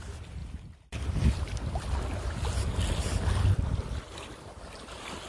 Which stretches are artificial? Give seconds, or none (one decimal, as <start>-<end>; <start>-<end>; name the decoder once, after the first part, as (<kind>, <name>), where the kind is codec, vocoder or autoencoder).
none